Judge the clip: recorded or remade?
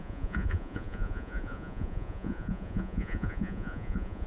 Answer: remade